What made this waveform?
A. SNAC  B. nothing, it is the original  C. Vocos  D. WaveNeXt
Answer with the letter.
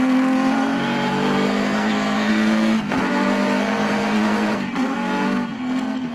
A